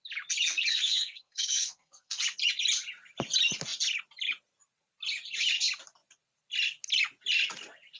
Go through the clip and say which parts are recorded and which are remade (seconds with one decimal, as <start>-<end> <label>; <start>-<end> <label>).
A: 0.0-0.7 recorded; 0.7-2.2 remade; 2.2-8.0 recorded